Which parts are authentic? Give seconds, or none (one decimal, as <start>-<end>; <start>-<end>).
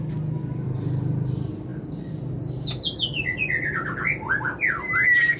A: 0.0-5.4